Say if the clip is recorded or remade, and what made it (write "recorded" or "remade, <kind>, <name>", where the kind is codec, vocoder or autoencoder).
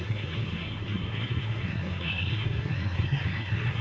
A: remade, codec, SNAC